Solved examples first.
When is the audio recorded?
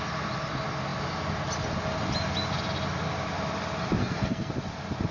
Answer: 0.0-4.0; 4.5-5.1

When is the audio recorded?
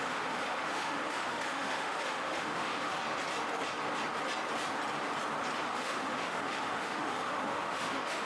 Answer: 3.0-5.7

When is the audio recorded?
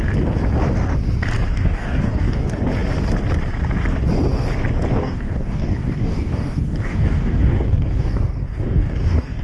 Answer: 0.0-1.5; 2.6-5.0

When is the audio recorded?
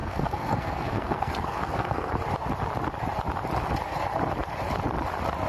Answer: 2.1-5.5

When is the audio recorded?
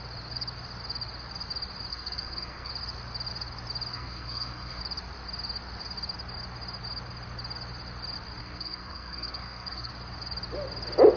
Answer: 0.0-1.9; 2.7-3.9; 4.8-8.4; 9.9-11.2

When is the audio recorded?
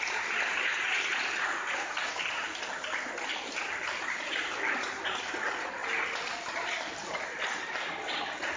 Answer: 0.0-8.6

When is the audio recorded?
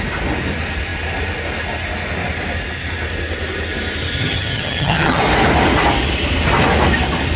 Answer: 0.0-4.2; 5.2-7.4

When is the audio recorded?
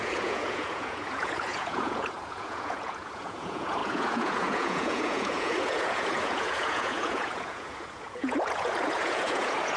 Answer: none